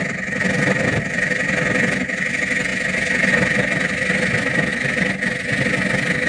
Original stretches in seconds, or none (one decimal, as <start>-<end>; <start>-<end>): 0.0-6.3